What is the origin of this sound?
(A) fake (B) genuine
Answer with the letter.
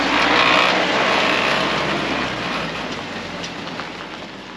B